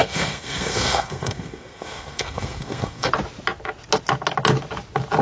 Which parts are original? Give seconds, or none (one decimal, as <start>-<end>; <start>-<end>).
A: 3.1-5.2